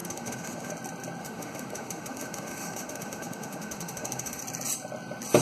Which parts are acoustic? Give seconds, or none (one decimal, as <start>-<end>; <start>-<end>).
0.7-1.2; 4.4-5.4